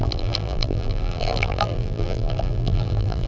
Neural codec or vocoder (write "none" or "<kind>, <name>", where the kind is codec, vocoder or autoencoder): vocoder, BigVGAN v2